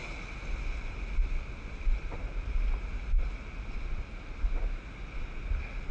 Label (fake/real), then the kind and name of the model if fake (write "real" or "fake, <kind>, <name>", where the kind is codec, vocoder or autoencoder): real